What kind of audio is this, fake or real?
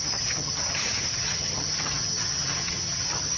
fake